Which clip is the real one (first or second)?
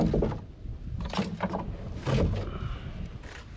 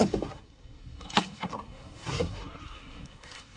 first